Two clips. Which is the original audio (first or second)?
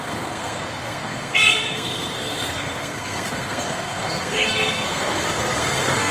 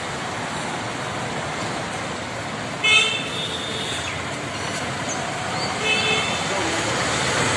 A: second